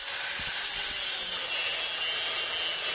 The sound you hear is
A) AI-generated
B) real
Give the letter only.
B